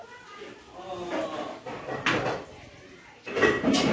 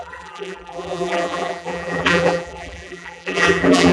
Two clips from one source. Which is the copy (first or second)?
second